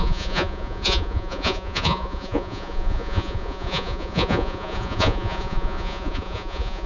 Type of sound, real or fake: fake